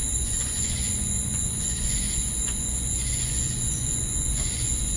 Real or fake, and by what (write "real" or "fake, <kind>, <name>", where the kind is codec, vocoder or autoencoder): fake, vocoder, Vocos